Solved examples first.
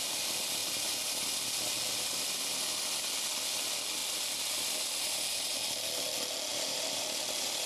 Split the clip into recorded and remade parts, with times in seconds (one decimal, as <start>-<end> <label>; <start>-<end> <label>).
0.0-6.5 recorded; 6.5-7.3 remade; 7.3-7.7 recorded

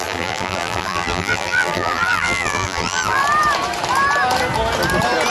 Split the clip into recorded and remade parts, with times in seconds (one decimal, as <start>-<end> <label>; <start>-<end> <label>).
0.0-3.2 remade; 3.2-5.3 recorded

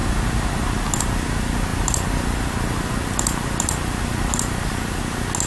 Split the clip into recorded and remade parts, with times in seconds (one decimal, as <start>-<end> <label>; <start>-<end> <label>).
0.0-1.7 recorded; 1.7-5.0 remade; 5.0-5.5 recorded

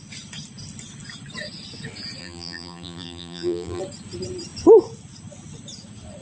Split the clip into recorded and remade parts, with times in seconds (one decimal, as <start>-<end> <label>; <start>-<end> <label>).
0.0-2.2 recorded; 2.2-3.8 remade; 3.8-6.2 recorded